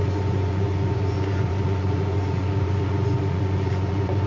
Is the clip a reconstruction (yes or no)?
yes